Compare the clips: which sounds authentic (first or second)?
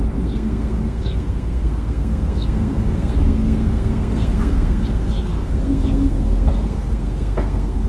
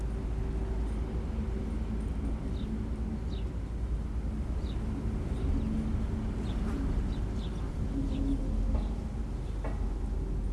second